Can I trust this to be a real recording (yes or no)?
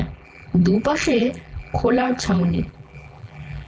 no